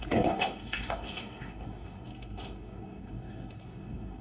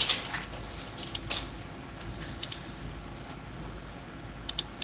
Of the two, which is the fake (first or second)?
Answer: first